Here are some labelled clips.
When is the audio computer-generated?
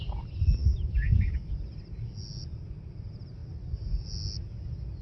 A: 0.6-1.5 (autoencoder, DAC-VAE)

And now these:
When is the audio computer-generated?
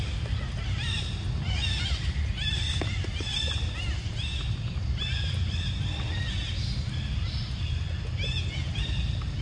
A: none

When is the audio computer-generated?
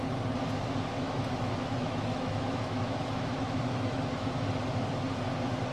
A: 0.9-4.3 (autoencoder, DAC-VAE)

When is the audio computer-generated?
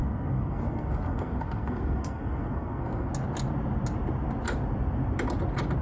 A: 0.0-3.1 (codec, SNAC)